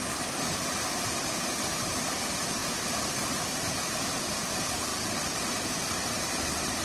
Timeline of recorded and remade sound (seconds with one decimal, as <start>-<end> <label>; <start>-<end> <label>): 0.0-6.8 remade